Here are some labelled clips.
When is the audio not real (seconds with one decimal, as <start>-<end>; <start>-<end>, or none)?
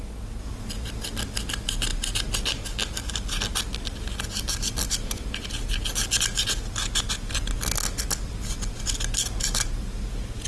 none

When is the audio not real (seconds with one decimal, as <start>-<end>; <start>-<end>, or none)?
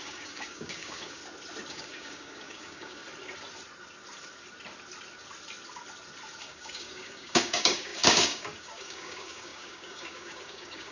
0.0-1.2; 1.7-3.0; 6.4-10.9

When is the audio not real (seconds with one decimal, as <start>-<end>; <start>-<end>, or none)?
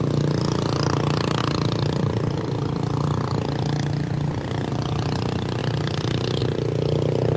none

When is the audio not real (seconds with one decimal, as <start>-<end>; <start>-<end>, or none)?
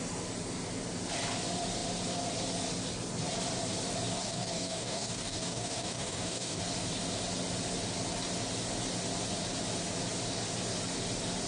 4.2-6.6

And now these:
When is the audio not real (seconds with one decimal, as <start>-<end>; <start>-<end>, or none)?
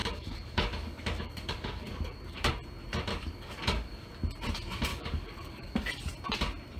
0.0-2.5; 3.1-4.1; 4.9-5.9